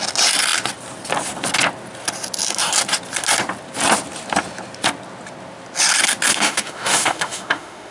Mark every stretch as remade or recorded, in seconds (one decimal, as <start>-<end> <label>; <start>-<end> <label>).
0.0-6.3 recorded; 6.3-7.9 remade

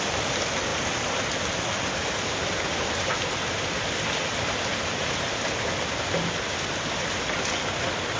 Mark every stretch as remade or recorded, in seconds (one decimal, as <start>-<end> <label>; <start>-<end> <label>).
0.0-8.2 recorded

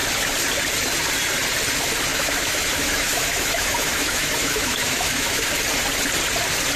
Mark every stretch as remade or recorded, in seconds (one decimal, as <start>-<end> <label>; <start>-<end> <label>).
0.0-2.1 recorded; 2.1-5.5 remade; 5.5-6.8 recorded

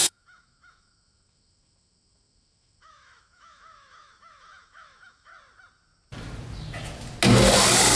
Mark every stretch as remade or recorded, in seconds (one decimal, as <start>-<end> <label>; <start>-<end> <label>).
0.0-5.3 remade; 5.3-8.0 recorded